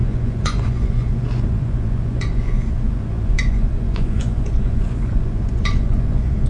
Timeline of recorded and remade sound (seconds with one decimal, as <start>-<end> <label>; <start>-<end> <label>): 0.0-6.5 remade